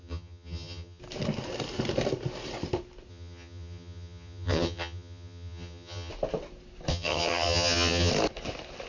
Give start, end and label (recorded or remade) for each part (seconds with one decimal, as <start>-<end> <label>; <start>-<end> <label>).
0.0-1.0 remade; 1.0-3.1 recorded; 3.1-6.1 remade; 6.1-6.9 recorded; 6.9-8.1 remade; 8.1-8.9 recorded